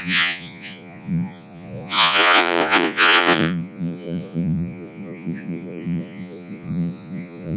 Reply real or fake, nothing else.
fake